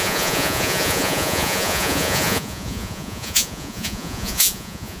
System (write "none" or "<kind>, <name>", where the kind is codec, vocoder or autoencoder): vocoder, Vocos